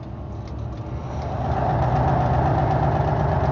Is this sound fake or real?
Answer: real